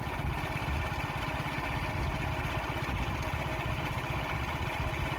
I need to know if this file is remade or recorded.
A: recorded